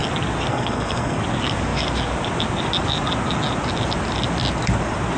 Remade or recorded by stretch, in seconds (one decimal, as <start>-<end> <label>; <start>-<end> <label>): 0.0-0.5 recorded; 0.5-1.2 remade; 1.2-5.2 recorded